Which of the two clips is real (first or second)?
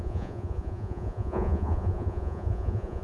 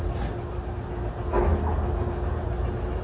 second